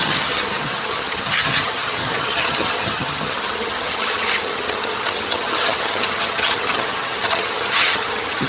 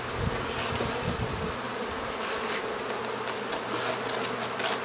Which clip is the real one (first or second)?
second